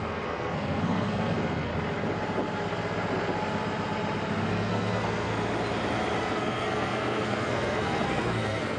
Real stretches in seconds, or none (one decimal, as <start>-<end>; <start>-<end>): 1.7-4.3; 5.3-6.2